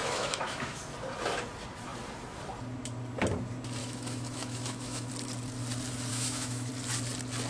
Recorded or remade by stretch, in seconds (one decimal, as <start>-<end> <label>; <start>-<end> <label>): 0.0-0.8 remade; 0.8-3.8 recorded; 3.8-5.1 remade; 5.1-6.1 recorded; 6.1-6.7 remade; 6.7-7.5 recorded